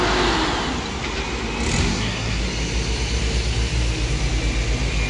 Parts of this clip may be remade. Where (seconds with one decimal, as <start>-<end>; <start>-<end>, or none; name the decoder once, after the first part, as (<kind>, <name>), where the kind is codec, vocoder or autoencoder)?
1.8-2.4 (codec, SNAC)